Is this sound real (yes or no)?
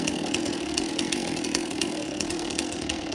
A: no